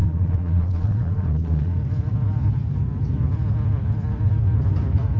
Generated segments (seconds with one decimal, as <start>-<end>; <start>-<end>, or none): 0.0-1.8